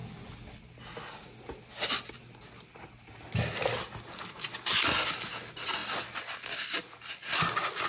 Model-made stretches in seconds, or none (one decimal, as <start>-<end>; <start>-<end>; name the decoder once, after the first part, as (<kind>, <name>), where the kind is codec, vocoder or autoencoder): none